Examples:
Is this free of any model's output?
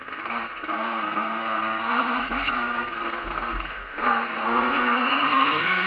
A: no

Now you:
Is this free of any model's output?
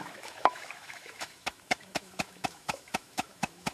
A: no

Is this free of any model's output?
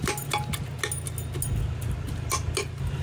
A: yes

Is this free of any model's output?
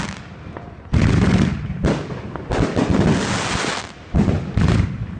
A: yes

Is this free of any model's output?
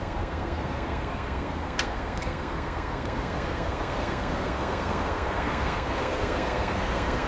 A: no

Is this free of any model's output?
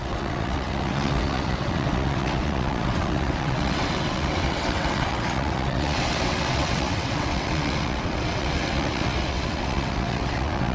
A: no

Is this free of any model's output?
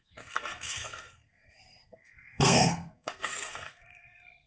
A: no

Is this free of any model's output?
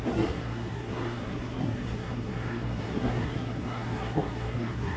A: no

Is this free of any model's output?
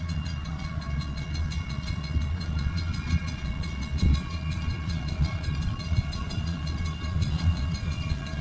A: no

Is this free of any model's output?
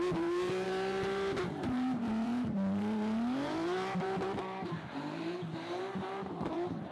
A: no